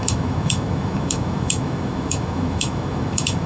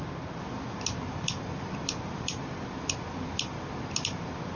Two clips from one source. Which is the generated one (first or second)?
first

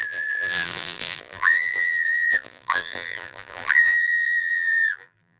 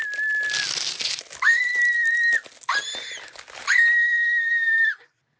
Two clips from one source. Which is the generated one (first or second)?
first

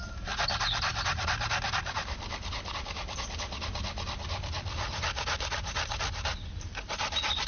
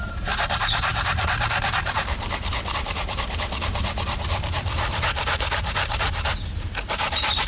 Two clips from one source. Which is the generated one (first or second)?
second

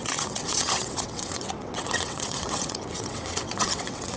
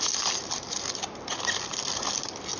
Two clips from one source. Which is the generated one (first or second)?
first